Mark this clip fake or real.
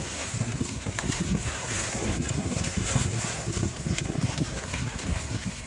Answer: fake